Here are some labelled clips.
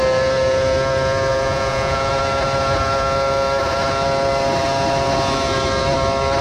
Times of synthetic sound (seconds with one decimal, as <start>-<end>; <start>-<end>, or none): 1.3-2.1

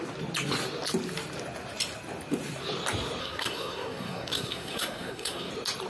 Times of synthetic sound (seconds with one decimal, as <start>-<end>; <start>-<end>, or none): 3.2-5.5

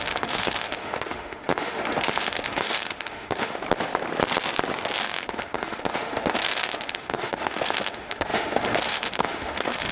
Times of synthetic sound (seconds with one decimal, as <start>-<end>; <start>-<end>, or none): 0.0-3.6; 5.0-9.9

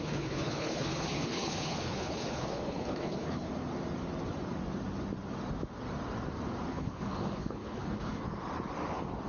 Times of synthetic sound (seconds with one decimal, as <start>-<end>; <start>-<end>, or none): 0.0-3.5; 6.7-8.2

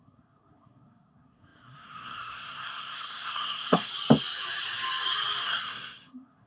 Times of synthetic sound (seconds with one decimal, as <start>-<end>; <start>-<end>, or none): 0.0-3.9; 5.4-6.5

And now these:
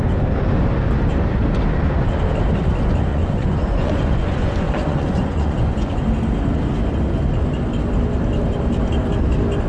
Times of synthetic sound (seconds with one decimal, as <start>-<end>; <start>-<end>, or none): 3.1-6.0

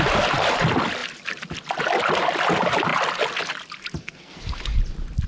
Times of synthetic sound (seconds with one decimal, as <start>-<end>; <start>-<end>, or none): 4.0-4.6